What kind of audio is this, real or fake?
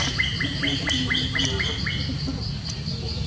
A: real